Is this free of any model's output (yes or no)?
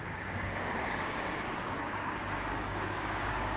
no